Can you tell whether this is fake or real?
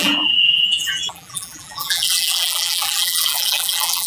fake